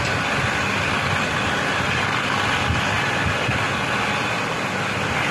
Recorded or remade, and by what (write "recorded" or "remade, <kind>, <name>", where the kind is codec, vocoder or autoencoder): recorded